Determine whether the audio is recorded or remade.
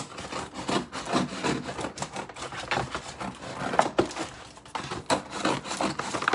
recorded